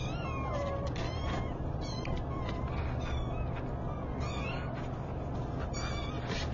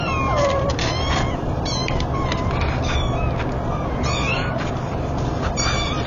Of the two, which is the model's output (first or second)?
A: second